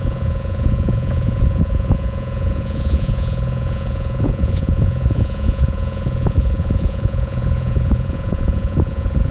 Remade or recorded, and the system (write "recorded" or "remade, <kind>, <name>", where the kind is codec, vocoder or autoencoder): remade, vocoder, Vocos